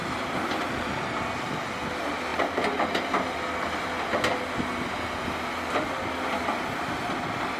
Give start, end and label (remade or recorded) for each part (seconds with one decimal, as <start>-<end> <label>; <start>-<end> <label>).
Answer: 0.0-7.6 recorded